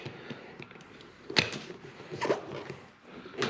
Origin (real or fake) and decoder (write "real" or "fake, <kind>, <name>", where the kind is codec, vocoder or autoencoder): real